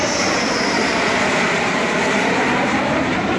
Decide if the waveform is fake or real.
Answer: fake